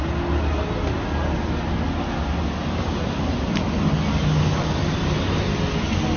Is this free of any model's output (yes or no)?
yes